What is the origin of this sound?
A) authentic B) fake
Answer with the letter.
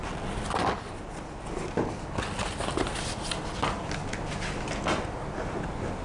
A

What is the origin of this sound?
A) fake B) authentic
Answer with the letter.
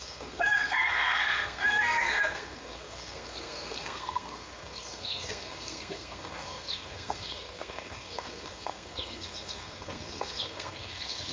A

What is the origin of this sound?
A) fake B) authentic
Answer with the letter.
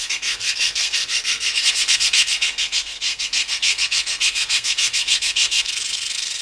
A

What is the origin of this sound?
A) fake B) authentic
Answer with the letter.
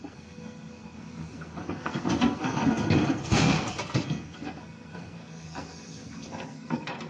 A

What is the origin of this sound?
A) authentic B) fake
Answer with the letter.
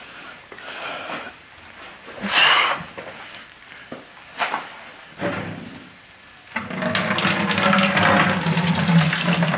A